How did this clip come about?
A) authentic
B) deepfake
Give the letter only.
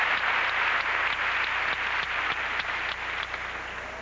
A